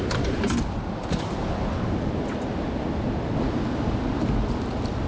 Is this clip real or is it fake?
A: real